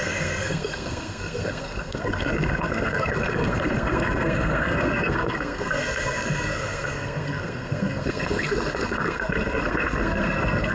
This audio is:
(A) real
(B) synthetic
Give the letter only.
B